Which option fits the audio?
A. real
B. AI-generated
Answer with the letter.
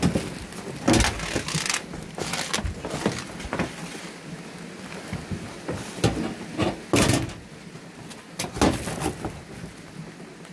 A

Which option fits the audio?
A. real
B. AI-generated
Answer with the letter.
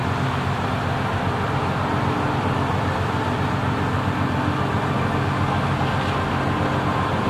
A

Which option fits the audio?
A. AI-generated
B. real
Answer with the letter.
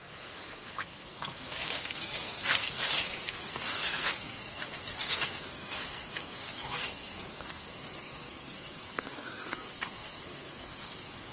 A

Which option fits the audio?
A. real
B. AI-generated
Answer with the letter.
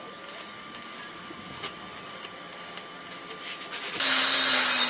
A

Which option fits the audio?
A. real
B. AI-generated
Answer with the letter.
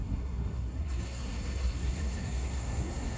B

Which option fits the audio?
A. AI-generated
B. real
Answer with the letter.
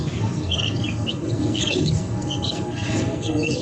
A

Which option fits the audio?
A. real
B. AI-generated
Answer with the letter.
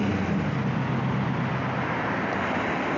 A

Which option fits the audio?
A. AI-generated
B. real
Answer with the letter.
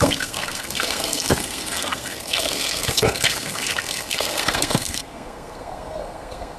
A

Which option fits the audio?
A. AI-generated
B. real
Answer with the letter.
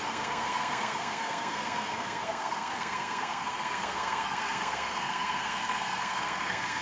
A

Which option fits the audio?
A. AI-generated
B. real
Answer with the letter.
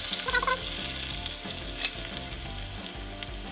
B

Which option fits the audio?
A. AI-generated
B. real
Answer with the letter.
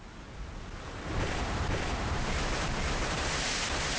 B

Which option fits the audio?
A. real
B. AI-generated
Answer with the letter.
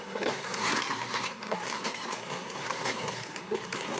B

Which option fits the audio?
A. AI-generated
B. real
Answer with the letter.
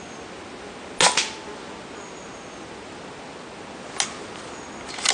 B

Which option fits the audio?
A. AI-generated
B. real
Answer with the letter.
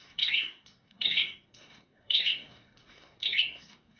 A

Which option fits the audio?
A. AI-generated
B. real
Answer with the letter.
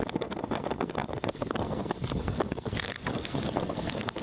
A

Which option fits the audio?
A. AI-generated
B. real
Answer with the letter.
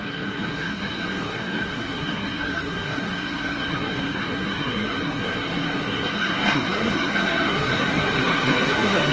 A